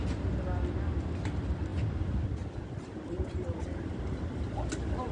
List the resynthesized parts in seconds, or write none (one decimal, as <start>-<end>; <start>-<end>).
none